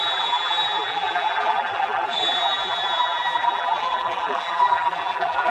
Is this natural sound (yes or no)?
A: no